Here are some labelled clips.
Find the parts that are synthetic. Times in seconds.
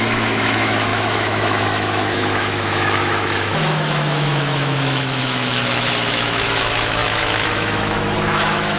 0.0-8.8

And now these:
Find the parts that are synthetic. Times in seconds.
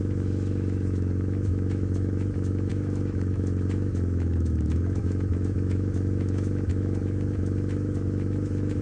0.0-8.8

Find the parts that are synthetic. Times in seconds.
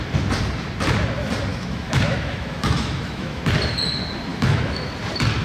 1.5-3.4; 4.3-4.9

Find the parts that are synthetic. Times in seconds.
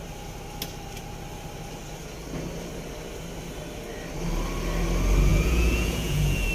5.3-6.5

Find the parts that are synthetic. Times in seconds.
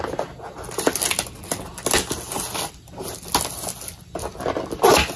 none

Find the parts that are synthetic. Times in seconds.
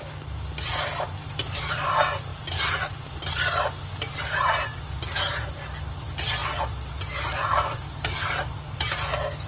1.2-1.9; 2.3-5.5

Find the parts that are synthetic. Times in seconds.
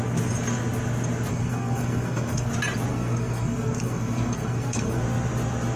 1.3-2.5; 2.9-5.0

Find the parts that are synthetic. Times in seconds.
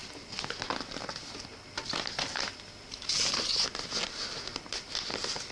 none